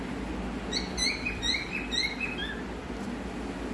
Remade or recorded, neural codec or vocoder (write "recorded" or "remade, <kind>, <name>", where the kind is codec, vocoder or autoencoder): recorded